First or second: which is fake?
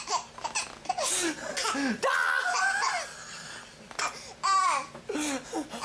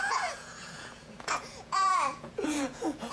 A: second